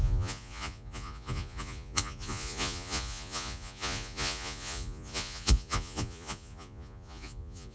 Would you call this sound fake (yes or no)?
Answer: yes